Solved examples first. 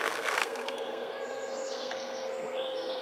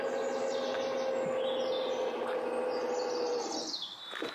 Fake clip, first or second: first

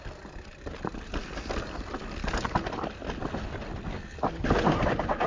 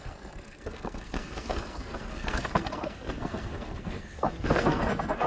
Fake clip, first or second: second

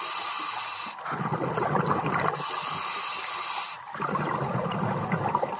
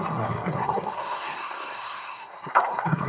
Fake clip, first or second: second